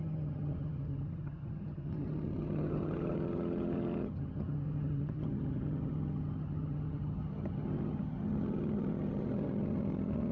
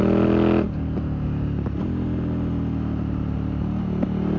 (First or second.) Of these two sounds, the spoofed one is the first